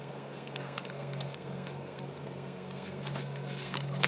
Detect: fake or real fake